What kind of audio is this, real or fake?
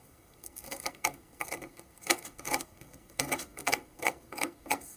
fake